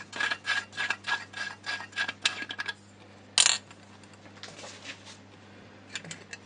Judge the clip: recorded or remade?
recorded